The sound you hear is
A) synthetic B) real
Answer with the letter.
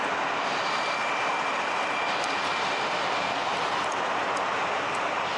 B